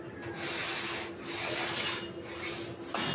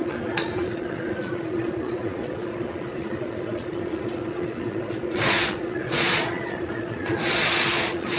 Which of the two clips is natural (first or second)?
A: first